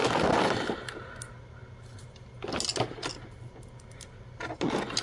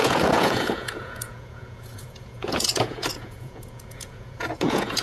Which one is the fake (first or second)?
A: second